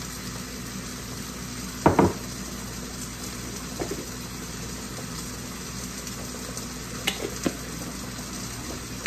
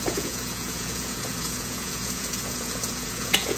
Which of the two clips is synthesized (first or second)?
second